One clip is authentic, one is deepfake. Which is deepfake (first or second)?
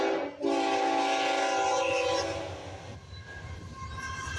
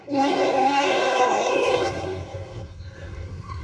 second